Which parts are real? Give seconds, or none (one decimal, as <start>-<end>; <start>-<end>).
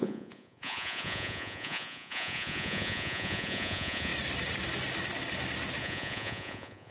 4.1-5.8